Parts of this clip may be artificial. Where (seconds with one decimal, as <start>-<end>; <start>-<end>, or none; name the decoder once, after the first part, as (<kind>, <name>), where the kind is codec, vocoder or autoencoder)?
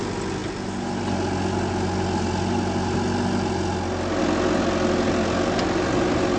none